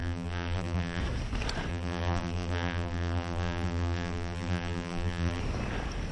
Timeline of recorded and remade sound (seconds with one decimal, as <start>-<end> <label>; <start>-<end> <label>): 0.0-1.0 remade; 1.0-1.7 recorded; 1.7-5.4 remade; 5.4-6.1 recorded